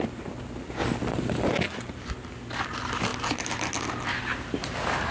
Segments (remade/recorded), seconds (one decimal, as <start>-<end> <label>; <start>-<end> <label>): 0.0-0.8 recorded; 0.8-1.5 remade; 1.5-5.1 recorded